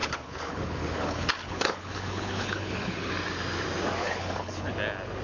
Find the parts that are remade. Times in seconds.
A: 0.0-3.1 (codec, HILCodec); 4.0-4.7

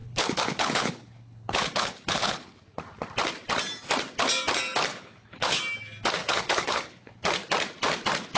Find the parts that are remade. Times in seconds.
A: 0.0-2.5 (codec, HILCodec); 4.9-5.6; 6.2-7.2

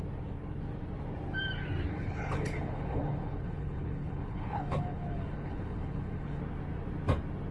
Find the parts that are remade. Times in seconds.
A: 1.9-6.4 (codec, HILCodec)

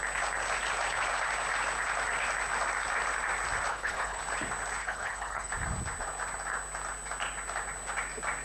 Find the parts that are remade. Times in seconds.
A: 3.7-4.2 (codec, HILCodec); 4.8-5.5

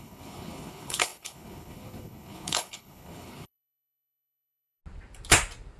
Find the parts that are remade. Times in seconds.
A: 0.0-4.8 (codec, HILCodec)

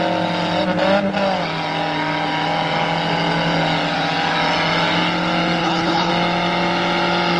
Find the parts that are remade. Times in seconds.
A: 5.6-6.1 (codec, HILCodec)

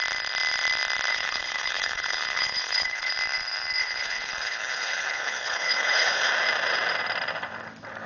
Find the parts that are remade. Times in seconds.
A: 1.1-3.1 (codec, HILCodec); 3.8-6.3